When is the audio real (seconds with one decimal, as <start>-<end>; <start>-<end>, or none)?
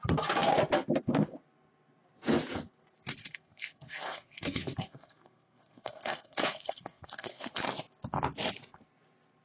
0.0-3.2; 7.6-9.4